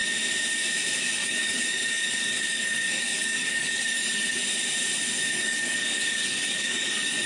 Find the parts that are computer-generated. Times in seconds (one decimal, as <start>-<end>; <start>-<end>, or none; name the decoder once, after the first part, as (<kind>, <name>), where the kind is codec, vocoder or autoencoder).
1.0-4.4 (codec, DAC); 5.2-7.3